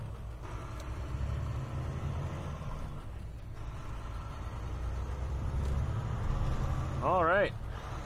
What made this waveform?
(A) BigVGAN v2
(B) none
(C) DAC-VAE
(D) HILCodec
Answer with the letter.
B